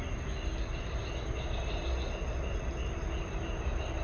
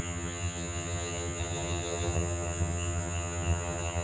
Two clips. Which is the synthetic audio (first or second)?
second